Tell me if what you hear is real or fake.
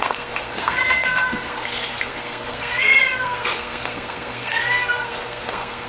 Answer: fake